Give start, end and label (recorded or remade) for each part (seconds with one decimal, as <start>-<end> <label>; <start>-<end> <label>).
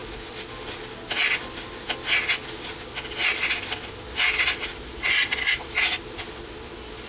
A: 0.0-7.1 recorded